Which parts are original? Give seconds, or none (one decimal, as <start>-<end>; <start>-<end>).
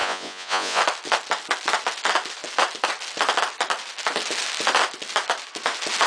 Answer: 0.8-6.1